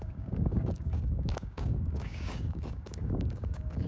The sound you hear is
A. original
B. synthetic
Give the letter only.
B